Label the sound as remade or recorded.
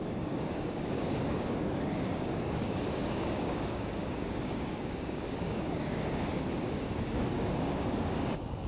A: remade